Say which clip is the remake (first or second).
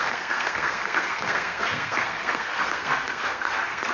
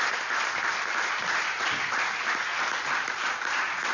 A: first